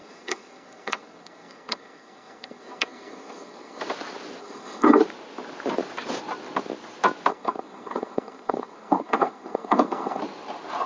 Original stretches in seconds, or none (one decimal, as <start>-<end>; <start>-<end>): 3.8-4.4; 5.0-7.3; 10.2-10.9